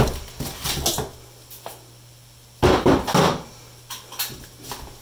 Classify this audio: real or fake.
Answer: real